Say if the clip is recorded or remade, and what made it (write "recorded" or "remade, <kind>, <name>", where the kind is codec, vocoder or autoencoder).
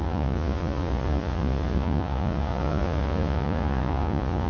remade, vocoder, Vocos